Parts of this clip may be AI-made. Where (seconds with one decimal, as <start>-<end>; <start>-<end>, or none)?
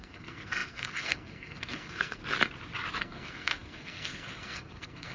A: 0.0-2.2; 3.0-5.1